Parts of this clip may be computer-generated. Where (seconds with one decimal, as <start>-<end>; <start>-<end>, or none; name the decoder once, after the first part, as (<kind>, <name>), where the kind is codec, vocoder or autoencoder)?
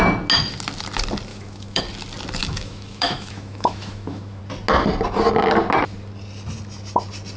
1.3-1.8 (autoencoder, DAC-VAE); 2.4-4.4